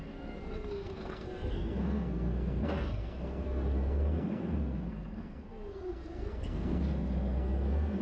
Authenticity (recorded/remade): remade